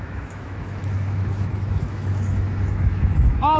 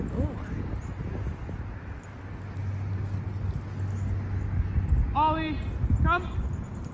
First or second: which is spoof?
first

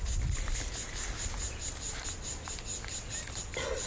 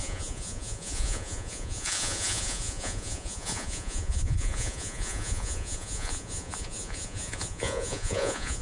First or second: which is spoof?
second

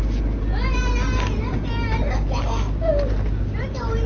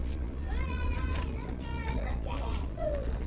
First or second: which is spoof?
second